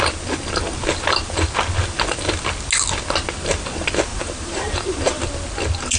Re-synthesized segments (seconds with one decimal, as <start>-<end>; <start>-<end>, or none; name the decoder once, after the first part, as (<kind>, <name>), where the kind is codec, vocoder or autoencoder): 4.1-5.2 (vocoder, BigVGAN v2)